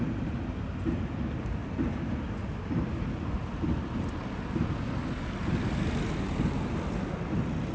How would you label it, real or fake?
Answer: real